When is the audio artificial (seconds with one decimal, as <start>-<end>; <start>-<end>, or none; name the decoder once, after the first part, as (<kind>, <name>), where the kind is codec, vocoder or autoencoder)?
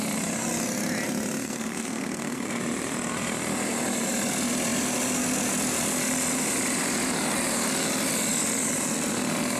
1.4-2.6 (codec, SNAC)